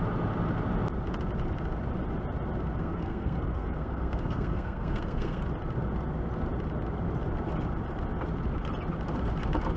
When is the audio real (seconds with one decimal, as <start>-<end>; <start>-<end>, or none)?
0.0-2.8; 5.4-9.8